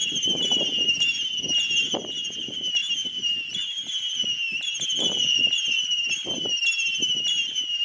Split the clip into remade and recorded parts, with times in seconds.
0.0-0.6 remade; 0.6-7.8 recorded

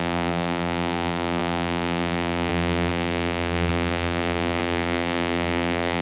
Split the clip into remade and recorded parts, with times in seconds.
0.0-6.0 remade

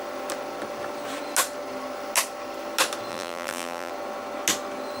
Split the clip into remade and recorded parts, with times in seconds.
0.0-3.1 recorded; 3.1-3.9 remade; 3.9-5.0 recorded